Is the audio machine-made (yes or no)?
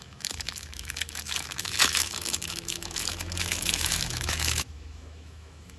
yes